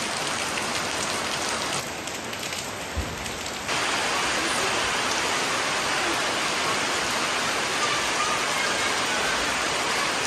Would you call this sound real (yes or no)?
yes